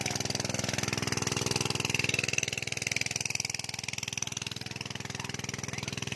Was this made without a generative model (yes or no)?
yes